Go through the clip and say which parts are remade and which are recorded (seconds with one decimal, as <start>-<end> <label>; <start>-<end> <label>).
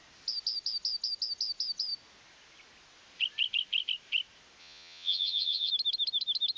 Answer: 0.0-4.6 recorded; 4.6-5.7 remade; 5.7-6.6 recorded